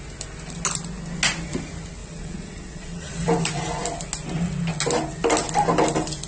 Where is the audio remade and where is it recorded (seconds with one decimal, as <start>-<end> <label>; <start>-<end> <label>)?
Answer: 0.0-2.0 recorded; 2.0-3.1 remade; 3.1-6.3 recorded